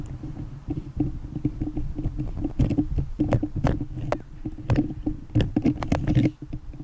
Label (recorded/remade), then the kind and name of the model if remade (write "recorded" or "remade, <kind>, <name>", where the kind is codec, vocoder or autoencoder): recorded